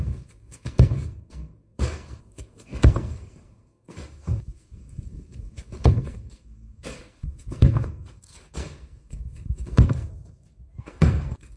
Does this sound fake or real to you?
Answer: fake